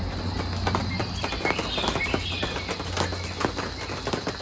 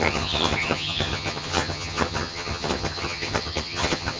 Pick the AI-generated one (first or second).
second